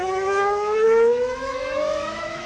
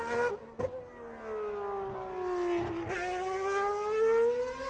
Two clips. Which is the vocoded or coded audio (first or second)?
first